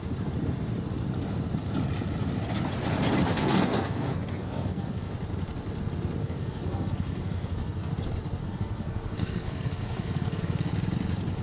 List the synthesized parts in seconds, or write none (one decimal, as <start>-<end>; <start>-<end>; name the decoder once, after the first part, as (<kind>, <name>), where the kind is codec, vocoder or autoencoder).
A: 3.3-5.1 (codec, SNAC); 6.2-7.9; 8.4-10.7